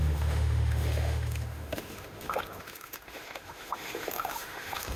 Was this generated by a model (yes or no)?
yes